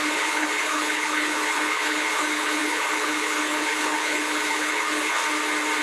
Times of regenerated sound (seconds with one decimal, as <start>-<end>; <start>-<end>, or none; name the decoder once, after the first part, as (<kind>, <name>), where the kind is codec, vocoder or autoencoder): 0.0-5.2 (codec, HILCodec)